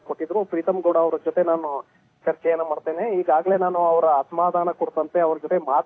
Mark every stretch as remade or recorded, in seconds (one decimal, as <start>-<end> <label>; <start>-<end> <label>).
0.0-2.0 recorded; 2.0-5.5 remade; 5.5-5.9 recorded